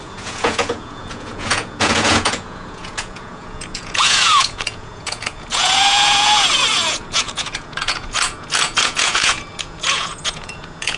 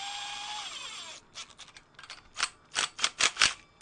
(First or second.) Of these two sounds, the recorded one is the second